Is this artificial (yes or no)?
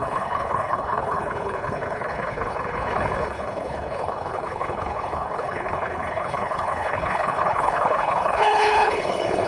yes